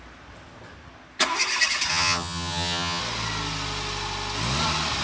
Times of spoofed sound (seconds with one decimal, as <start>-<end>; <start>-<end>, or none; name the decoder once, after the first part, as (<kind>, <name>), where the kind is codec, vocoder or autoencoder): 1.9-3.0 (vocoder, HiFi-GAN)